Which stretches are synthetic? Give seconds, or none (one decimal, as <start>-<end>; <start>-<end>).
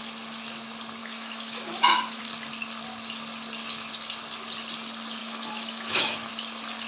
1.0-2.2; 5.2-6.3